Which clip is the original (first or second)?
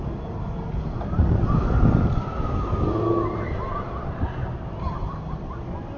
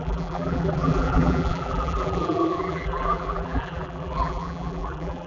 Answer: first